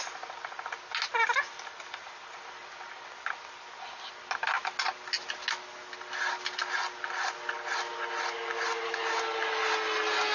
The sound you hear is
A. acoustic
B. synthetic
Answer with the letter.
A